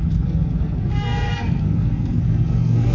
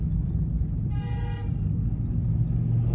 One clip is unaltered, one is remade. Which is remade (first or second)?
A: first